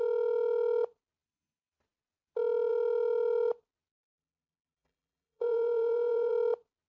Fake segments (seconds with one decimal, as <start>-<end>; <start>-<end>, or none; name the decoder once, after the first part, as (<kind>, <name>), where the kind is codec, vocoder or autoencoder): 4.1-6.3 (vocoder, BigVGAN v2)